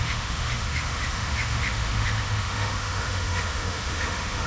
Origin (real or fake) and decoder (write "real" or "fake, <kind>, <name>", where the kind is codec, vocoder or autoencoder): fake, autoencoder, DAC-VAE